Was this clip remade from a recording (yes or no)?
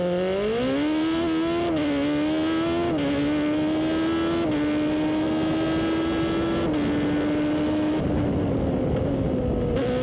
no